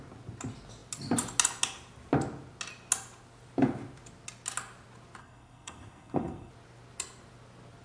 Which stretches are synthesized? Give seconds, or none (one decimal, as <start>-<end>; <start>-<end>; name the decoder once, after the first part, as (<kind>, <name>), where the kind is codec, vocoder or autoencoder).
5.2-6.5 (codec, SNAC)